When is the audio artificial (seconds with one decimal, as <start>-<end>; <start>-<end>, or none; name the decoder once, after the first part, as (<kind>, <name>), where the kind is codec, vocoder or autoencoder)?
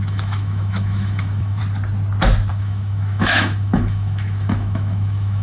0.0-1.6 (autoencoder, DAC-VAE); 2.5-5.4